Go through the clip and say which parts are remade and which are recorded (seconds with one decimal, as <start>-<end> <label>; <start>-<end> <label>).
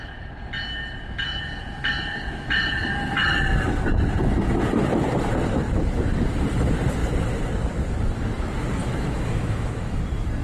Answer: 0.0-8.8 recorded; 8.8-10.0 remade; 10.0-10.4 recorded